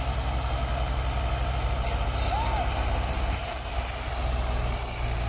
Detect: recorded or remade recorded